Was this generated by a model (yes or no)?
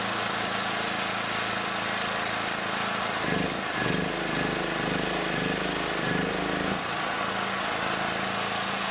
no